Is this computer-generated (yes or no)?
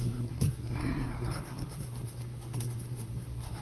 yes